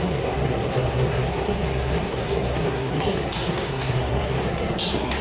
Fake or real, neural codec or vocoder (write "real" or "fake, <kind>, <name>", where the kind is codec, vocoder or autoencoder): fake, codec, SNAC